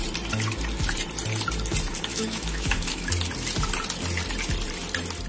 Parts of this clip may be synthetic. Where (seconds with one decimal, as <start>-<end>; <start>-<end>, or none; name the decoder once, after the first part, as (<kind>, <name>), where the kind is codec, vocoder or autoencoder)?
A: 2.1-3.1 (autoencoder, DAC-VAE)